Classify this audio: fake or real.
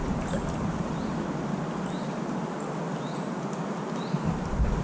real